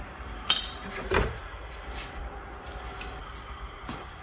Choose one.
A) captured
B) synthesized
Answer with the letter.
B